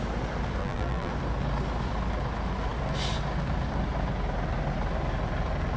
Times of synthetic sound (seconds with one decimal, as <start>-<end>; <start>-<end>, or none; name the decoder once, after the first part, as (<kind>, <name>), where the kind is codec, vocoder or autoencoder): 0.6-1.1 (vocoder, BigVGAN v2)